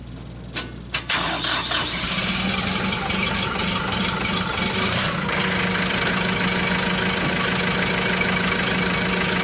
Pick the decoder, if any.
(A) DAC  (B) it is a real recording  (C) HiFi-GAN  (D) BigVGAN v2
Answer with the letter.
B